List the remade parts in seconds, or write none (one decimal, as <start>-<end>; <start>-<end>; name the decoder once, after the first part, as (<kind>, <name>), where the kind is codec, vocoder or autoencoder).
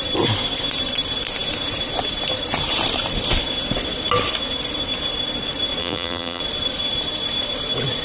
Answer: 5.8-6.4 (vocoder, BigVGAN v2)